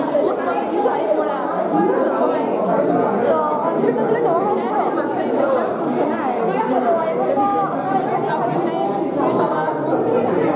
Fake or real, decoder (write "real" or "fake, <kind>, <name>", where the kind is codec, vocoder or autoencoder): real